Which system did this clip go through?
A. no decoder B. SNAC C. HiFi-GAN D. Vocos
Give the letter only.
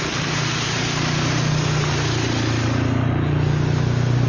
A